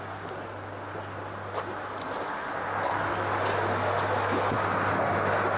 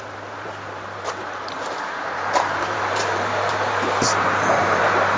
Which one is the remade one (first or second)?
second